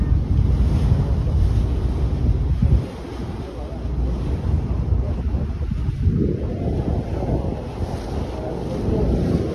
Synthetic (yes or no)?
no